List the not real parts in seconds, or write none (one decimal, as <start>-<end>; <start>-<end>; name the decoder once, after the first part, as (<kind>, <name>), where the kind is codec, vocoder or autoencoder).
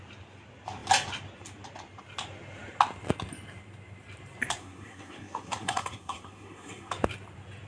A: 4.6-6.9 (codec, SNAC)